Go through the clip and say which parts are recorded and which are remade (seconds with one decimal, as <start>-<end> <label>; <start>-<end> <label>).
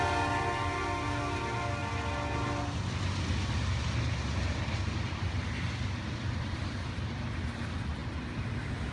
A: 0.0-8.9 recorded